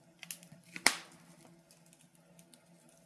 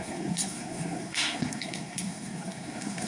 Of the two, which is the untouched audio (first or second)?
first